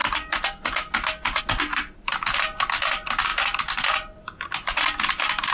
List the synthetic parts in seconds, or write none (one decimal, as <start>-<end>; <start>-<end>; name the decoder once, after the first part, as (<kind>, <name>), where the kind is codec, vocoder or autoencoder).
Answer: none